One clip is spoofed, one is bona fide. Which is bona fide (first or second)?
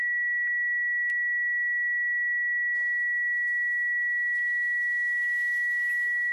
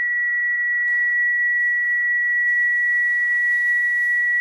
first